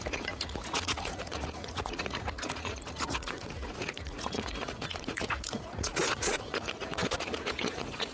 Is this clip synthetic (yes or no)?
yes